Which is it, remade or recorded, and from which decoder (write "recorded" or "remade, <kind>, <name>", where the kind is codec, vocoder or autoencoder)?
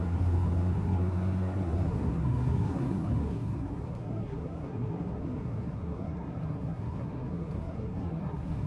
remade, codec, SNAC